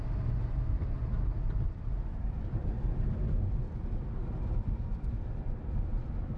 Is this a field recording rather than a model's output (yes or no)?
no